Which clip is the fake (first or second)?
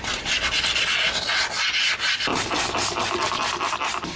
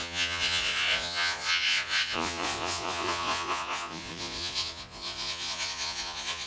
second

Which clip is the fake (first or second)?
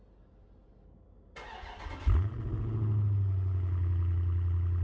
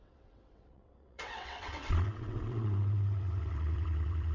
second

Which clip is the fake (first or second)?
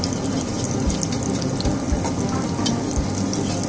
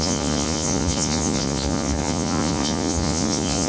second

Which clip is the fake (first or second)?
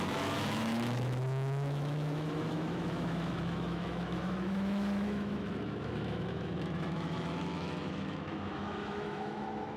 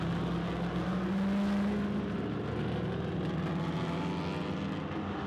first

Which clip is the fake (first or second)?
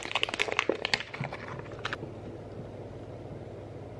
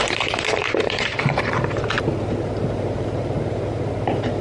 second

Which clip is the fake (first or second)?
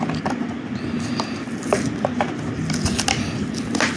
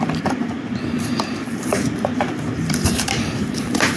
second